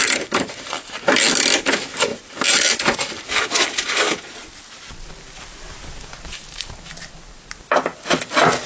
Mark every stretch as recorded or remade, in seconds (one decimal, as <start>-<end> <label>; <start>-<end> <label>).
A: 0.0-0.7 remade; 0.7-2.1 recorded; 2.1-3.2 remade; 3.2-8.7 recorded